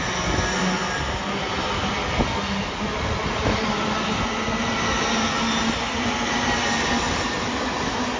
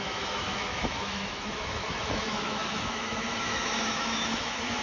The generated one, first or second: second